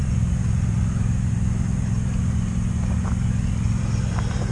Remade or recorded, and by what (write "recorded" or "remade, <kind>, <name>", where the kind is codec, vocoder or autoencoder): recorded